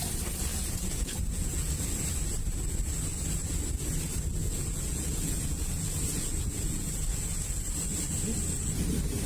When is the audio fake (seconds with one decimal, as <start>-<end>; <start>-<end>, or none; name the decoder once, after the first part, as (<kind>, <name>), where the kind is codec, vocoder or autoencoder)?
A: 0.5-1.7 (vocoder, Vocos); 4.4-6.9

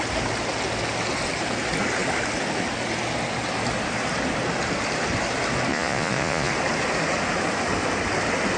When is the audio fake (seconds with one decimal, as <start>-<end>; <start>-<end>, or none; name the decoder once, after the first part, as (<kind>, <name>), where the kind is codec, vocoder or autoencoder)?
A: 5.7-6.5 (vocoder, Vocos)